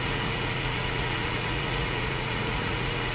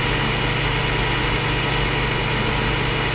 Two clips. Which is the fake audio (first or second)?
first